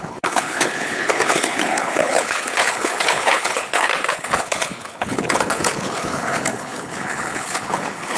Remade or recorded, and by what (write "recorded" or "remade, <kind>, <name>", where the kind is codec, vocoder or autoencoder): remade, codec, HILCodec